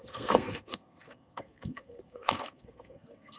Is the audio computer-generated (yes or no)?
yes